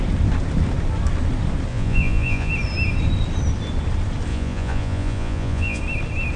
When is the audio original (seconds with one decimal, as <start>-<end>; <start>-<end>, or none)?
0.0-1.7; 2.5-4.3; 5.8-6.4